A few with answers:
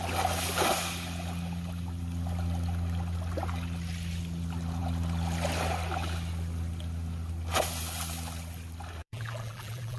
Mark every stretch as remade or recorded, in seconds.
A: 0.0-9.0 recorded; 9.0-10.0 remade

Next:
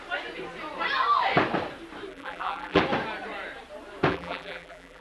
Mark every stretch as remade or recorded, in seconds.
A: 0.0-2.1 recorded; 2.1-2.8 remade; 2.8-4.1 recorded; 4.1-5.0 remade

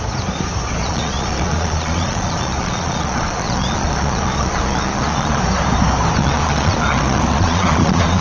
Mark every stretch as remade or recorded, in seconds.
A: 0.0-0.8 recorded; 0.8-5.4 remade; 5.4-6.2 recorded; 6.2-8.2 remade

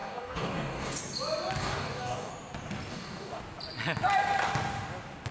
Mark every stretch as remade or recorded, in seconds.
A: 0.0-1.0 remade; 1.0-1.6 recorded; 1.6-2.3 remade; 2.3-2.9 recorded; 2.9-3.4 remade; 3.4-5.3 recorded

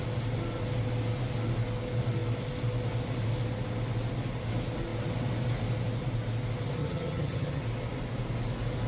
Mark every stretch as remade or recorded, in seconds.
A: 0.0-6.8 recorded; 6.8-7.6 remade; 7.6-8.9 recorded

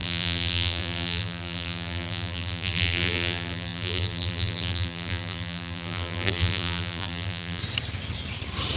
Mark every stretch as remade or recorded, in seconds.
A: 0.0-7.6 remade; 7.6-8.8 recorded

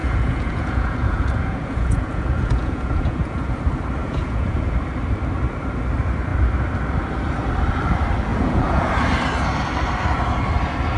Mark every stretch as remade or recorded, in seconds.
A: 0.0-3.6 remade; 3.6-4.0 recorded; 4.0-4.7 remade; 4.7-8.3 recorded; 8.3-8.9 remade; 8.9-11.0 recorded

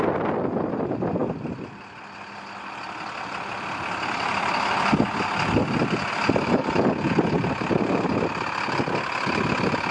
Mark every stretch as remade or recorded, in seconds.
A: 0.0-9.9 recorded